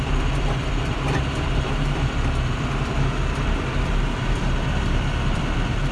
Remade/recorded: remade